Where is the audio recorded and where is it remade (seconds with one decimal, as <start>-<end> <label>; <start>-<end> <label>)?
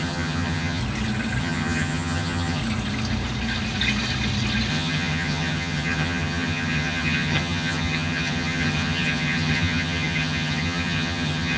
0.0-0.8 remade; 0.8-1.4 recorded; 1.4-2.6 remade; 2.6-4.7 recorded; 4.7-11.6 remade